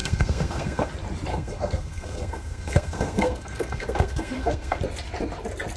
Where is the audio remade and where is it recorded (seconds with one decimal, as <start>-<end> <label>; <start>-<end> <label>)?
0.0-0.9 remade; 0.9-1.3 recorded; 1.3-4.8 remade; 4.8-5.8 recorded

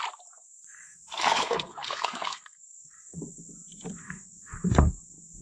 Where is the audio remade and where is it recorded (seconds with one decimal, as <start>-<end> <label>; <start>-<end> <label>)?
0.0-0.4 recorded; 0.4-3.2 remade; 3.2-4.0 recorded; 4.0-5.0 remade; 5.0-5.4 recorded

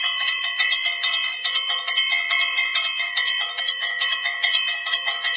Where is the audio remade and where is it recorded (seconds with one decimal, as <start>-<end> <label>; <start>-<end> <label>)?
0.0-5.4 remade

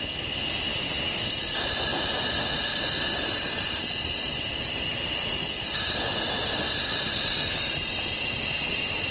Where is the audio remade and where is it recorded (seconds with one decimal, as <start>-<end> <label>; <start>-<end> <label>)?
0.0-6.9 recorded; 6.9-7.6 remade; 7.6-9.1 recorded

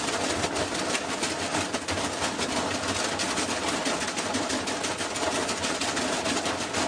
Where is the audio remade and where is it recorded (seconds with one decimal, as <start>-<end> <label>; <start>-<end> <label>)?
0.0-3.8 recorded; 3.8-4.9 remade; 4.9-6.9 recorded

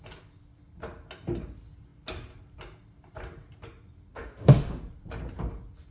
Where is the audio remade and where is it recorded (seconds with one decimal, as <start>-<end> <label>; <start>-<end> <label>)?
0.0-4.1 recorded; 4.1-4.8 remade; 4.8-5.9 recorded

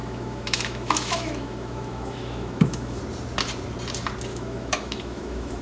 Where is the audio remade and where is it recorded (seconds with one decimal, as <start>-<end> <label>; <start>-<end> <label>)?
0.0-3.0 remade; 3.0-4.3 recorded; 4.3-5.6 remade